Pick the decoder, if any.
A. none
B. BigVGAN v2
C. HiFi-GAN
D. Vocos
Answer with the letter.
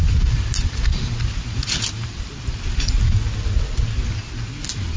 A